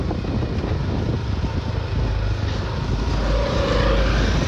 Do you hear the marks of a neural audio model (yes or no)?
no